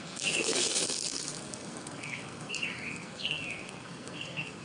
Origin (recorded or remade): remade